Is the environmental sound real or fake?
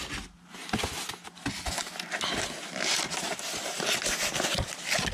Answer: real